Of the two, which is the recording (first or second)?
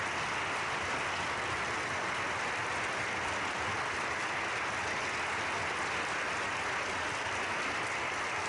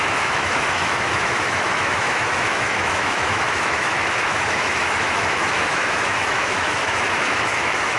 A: first